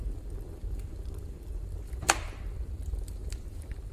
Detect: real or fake real